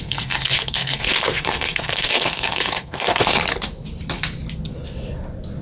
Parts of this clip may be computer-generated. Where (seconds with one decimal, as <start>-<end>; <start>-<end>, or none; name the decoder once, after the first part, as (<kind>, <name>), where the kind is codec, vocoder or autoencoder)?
0.0-3.4 (codec, SNAC)